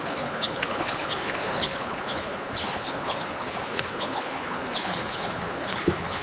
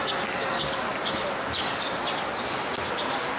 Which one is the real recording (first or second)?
second